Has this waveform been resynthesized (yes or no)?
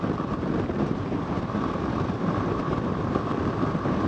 yes